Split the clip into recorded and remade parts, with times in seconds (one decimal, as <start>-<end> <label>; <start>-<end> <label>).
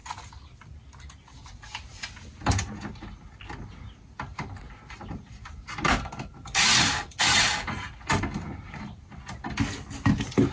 0.0-10.5 recorded